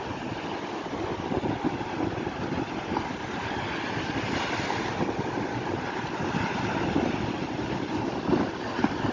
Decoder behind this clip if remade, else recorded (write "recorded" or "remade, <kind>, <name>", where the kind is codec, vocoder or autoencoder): recorded